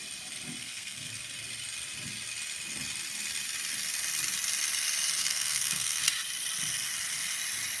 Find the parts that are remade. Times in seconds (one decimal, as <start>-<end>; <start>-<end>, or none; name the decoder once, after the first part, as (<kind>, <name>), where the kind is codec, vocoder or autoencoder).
0.6-1.1 (codec, SNAC); 5.2-6.0